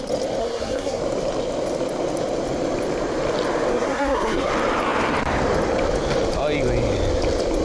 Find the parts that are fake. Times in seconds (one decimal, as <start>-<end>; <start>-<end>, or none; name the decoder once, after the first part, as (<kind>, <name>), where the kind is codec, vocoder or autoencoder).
0.4-1.0 (codec, SNAC); 3.7-4.5